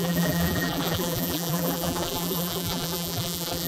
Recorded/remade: remade